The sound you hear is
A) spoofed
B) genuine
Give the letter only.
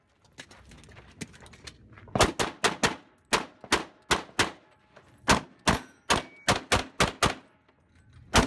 B